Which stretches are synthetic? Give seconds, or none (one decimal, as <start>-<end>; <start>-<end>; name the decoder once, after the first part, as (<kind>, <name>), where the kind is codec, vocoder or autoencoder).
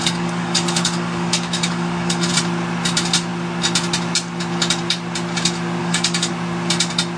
0.0-2.3 (codec, DAC); 5.8-6.3